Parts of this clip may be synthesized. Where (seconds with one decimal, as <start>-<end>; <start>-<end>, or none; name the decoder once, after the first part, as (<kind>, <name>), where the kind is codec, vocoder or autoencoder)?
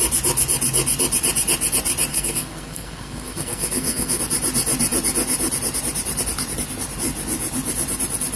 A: 2.1-4.2 (codec, SNAC)